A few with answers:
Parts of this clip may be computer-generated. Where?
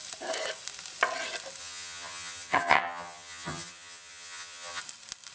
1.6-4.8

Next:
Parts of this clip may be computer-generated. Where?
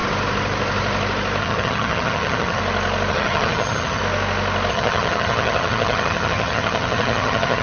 1.4-2.6; 3.1-4.0; 4.7-7.6